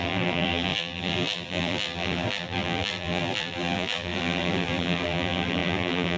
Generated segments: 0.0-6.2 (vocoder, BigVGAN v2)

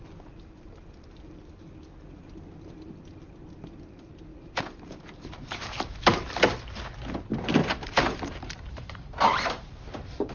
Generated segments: 4.3-6.3 (vocoder, BigVGAN v2); 7.6-10.3

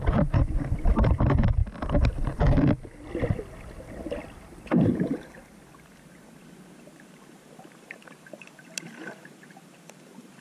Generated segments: 0.0-1.6 (vocoder, BigVGAN v2); 6.1-10.4

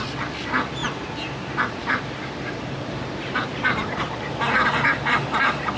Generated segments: 0.8-4.3 (vocoder, BigVGAN v2)